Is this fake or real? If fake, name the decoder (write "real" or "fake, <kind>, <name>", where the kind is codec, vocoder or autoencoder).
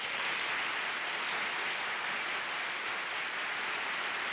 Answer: real